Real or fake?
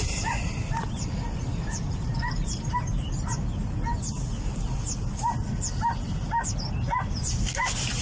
real